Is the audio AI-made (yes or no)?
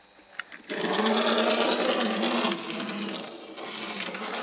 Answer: no